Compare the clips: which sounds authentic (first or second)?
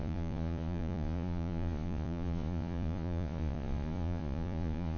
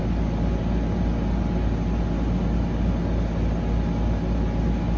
second